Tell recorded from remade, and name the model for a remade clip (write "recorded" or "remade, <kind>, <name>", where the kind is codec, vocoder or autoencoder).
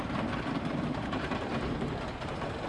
remade, vocoder, BigVGAN v2